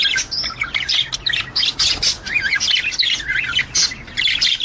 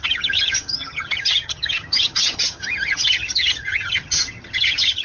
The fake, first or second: second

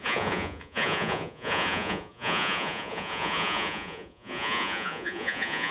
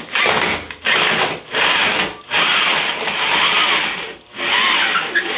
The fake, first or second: first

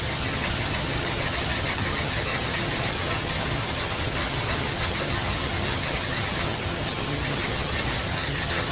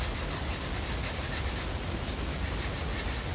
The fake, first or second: first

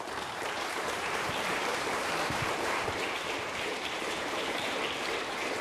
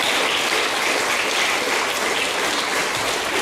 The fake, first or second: first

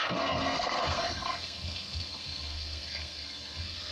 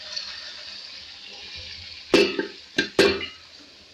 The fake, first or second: first